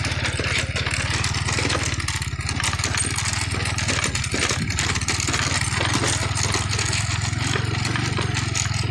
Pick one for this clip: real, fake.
real